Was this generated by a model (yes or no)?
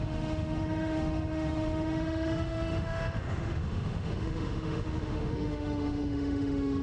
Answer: yes